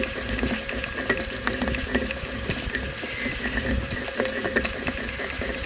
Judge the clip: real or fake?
real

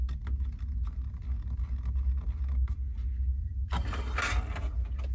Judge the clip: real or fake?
real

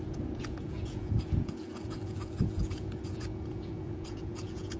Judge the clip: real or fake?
fake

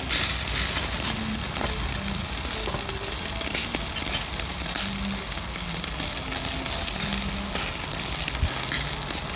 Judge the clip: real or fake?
real